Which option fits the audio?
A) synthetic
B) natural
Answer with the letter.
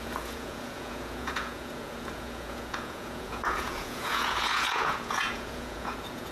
A